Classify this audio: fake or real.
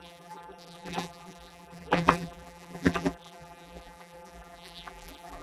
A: fake